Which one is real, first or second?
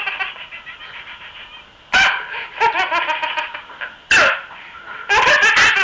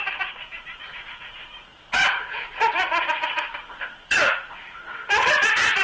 first